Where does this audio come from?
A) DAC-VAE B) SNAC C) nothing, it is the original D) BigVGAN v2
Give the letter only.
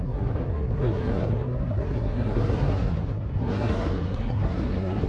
B